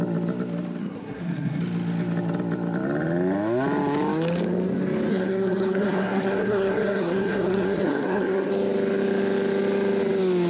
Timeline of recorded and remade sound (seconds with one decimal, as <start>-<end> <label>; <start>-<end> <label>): 0.0-0.8 recorded; 0.8-1.6 remade; 1.6-5.1 recorded; 5.1-8.5 remade; 8.5-10.5 recorded